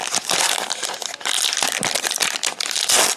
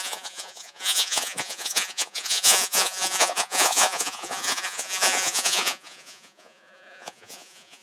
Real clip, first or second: first